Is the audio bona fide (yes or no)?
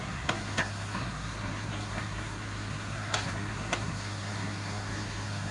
no